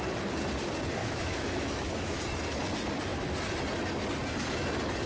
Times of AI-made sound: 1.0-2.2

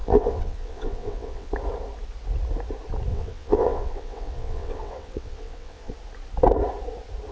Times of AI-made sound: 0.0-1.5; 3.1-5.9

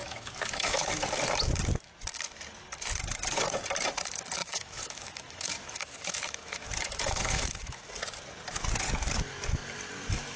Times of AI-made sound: 0.0-0.9; 4.4-7.9

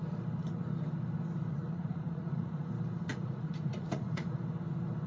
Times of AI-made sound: 1.5-2.7; 3.1-4.4

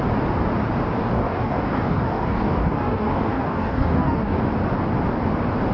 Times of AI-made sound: 1.0-4.4

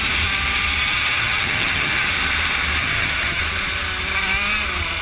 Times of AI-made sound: 0.8-2.1; 2.8-3.4

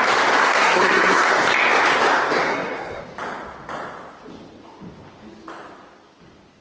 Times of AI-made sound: 0.4-1.3; 2.5-3.0

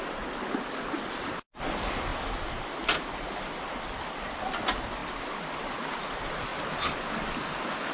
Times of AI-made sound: none